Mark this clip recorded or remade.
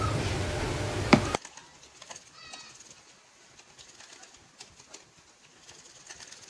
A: recorded